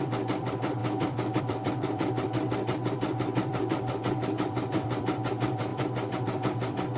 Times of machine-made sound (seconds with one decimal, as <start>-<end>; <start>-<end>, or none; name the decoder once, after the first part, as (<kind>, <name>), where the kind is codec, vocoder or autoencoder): 0.0-7.0 (vocoder, BigVGAN v2)